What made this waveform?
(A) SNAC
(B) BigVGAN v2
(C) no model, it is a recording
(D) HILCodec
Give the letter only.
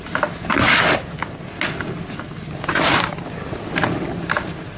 C